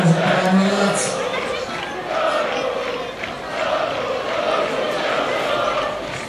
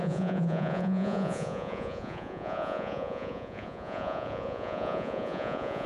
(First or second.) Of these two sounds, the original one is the first